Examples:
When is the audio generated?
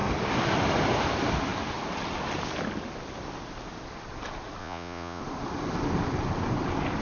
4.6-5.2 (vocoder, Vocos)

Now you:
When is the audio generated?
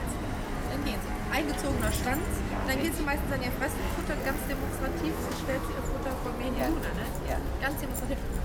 5.1-5.7 (autoencoder, DAC-VAE)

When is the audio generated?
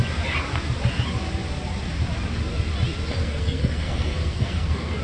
3.2-5.0 (codec, SNAC)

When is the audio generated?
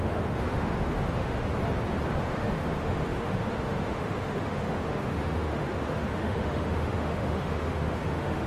0.0-1.5 (autoencoder, DAC-VAE); 2.2-8.5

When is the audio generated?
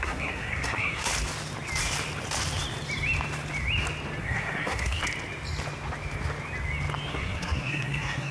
0.0-1.1 (codec, SNAC); 4.2-5.0; 7.1-8.3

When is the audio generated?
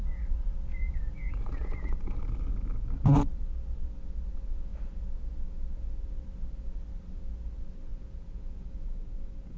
0.0-2.2 (vocoder, Vocos); 7.9-9.6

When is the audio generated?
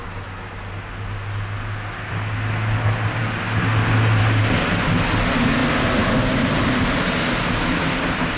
none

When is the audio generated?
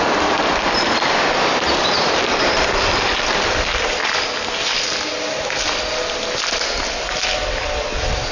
0.0-4.0 (vocoder, BigVGAN v2)